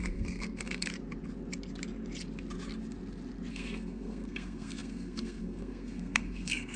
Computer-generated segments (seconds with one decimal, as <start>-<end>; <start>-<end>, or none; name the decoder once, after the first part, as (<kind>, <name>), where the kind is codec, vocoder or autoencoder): 0.0-0.9 (codec, SNAC); 3.5-6.8